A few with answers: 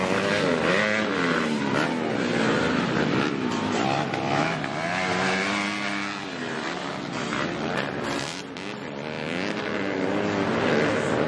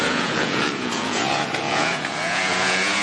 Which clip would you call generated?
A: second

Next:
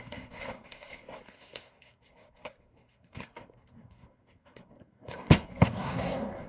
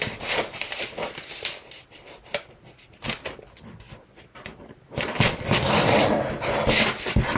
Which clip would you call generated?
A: first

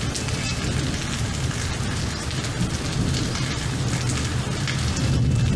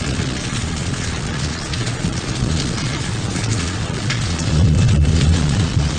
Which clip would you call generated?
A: second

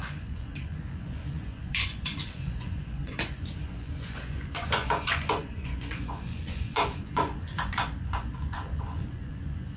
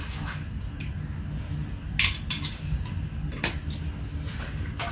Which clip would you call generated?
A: first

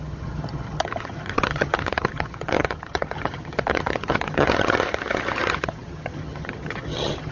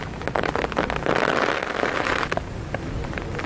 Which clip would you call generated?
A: first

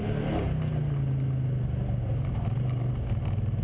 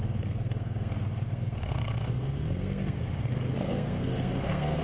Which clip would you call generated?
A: second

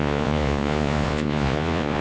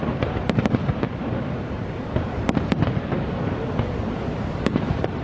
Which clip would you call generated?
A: first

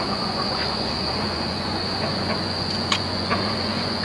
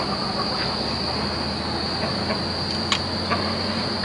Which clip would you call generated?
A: first